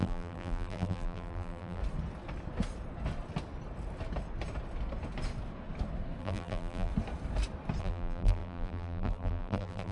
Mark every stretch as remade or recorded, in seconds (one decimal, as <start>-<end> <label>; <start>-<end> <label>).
0.0-1.8 remade; 1.8-6.2 recorded; 6.2-6.9 remade; 6.9-7.8 recorded; 7.8-9.9 remade